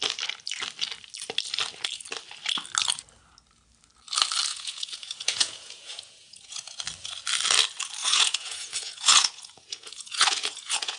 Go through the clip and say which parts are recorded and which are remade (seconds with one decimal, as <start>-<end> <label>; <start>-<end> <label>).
0.0-4.5 recorded; 4.5-6.8 remade; 6.8-8.0 recorded; 8.0-11.0 remade